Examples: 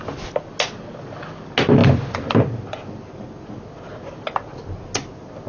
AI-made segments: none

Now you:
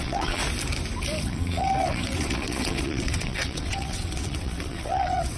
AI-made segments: 0.0-0.4 (vocoder, WaveNeXt); 1.2-5.4

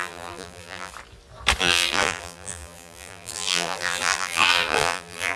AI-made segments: 0.0-0.9 (vocoder, BigVGAN v2); 1.6-5.4

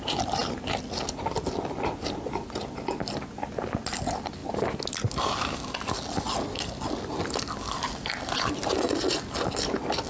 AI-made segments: none